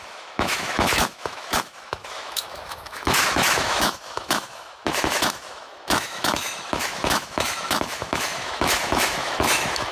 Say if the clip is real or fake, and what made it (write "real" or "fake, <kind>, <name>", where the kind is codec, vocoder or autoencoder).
fake, autoencoder, DAC-VAE